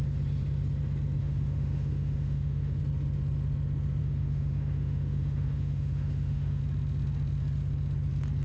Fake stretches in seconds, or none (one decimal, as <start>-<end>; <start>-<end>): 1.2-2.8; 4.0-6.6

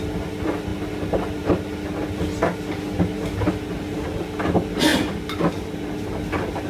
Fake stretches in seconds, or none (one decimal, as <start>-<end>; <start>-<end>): none

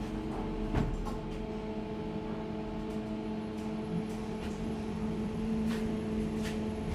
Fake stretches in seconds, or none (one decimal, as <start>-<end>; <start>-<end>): 4.2-5.9

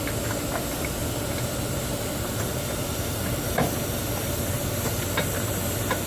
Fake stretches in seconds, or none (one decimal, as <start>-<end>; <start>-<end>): 1.0-4.7